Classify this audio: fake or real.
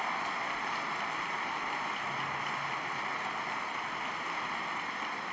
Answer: real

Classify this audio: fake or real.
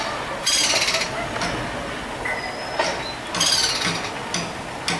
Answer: real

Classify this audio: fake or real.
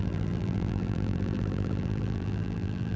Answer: fake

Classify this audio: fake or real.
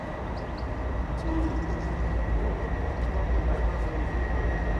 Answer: real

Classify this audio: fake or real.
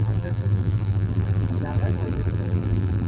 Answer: fake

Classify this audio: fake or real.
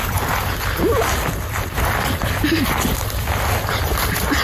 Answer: real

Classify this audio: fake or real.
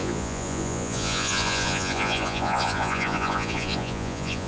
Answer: fake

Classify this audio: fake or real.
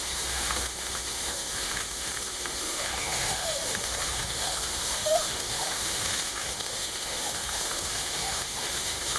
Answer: fake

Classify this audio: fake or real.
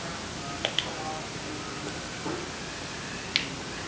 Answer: real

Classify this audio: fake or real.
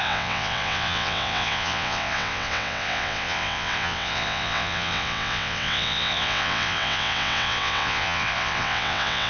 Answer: fake